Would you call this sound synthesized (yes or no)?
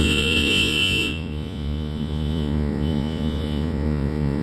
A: yes